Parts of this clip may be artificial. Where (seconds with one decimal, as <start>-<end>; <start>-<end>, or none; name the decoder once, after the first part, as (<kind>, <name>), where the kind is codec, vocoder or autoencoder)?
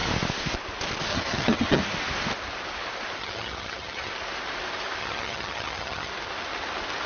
1.1-1.8 (vocoder, HiFi-GAN); 3.2-4.1; 5.0-6.1